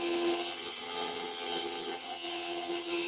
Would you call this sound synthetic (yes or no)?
yes